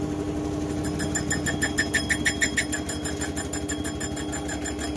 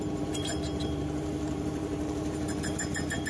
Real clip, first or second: first